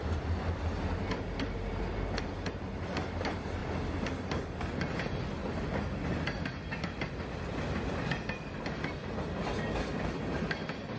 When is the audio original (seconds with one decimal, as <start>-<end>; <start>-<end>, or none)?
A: 3.6-4.2; 5.4-10.1